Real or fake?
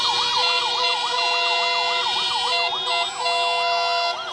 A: real